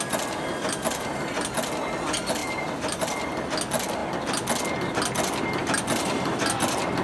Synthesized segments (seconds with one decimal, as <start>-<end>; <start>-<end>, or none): 2.4-3.0